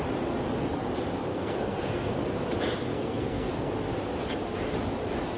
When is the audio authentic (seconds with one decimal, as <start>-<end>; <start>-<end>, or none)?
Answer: 0.0-1.3; 2.1-2.9; 3.7-5.4